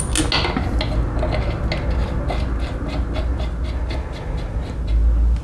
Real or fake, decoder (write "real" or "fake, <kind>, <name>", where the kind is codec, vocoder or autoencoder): real